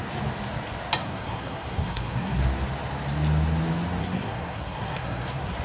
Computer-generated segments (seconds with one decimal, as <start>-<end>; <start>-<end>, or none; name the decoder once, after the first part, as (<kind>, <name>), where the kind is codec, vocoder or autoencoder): 1.0-2.4 (codec, SNAC); 4.0-5.6